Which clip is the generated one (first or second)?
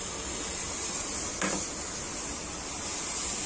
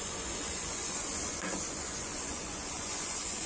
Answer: second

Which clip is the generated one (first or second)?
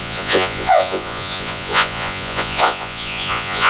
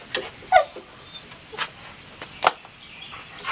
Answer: first